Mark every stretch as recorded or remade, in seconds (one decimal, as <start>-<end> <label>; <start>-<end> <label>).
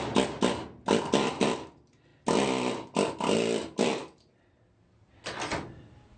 0.0-6.2 recorded